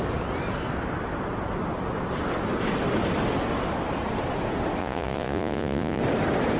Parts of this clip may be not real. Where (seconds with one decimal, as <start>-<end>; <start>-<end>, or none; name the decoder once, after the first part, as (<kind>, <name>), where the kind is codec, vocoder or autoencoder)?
4.8-6.0 (vocoder, Vocos)